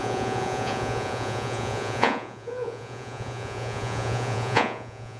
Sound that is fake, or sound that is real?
fake